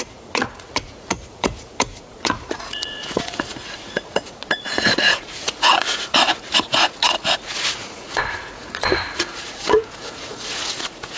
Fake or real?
fake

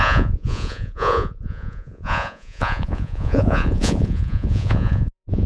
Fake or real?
fake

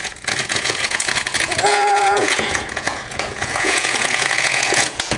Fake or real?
fake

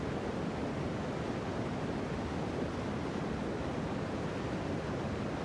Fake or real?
real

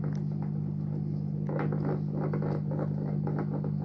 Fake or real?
real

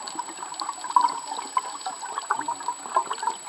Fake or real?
real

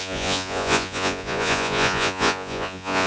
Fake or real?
fake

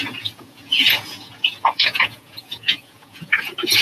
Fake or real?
fake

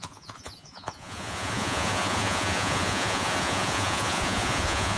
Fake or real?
fake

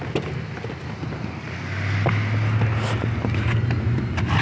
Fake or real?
real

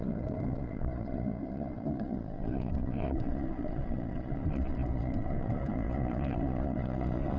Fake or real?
fake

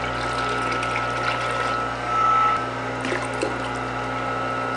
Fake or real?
real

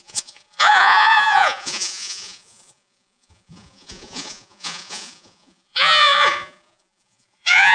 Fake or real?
fake